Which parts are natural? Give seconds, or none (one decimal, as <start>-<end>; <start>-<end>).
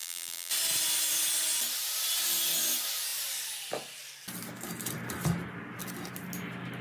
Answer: 0.5-6.8